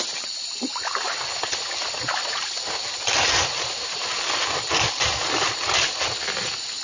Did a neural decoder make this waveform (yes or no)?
no